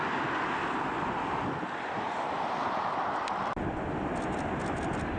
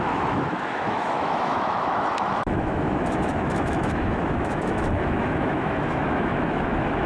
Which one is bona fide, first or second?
first